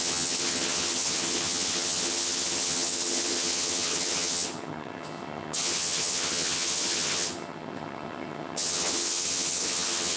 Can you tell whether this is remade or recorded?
remade